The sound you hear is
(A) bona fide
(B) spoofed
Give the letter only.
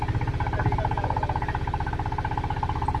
A